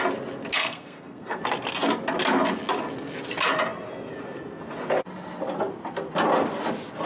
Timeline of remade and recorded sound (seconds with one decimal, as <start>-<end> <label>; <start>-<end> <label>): 0.0-0.6 recorded; 0.6-1.4 remade; 1.4-7.1 recorded